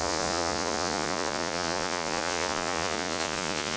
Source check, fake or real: fake